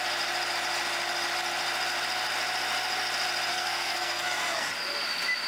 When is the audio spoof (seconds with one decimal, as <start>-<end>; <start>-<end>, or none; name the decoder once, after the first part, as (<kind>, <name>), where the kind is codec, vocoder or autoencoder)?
3.5-4.7 (codec, SNAC)